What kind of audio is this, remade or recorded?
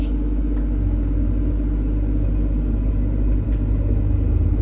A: recorded